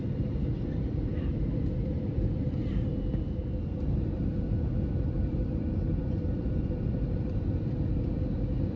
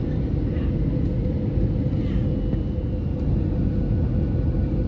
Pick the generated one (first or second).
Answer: first